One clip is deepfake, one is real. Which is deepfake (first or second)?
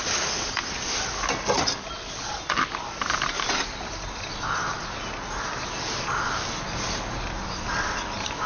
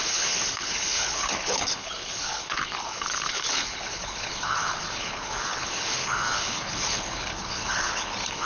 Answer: second